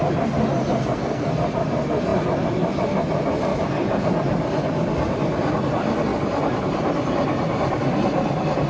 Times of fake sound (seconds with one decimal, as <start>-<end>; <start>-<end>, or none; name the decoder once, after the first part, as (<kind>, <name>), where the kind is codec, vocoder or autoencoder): 0.8-1.3 (codec, SNAC)